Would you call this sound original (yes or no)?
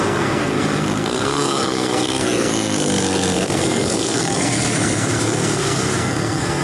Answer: no